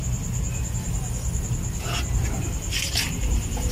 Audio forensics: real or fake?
real